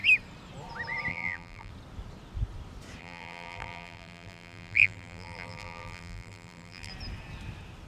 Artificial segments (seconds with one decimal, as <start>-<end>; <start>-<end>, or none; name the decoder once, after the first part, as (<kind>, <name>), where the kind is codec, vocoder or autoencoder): 1.1-1.7 (vocoder, BigVGAN v2); 3.0-6.9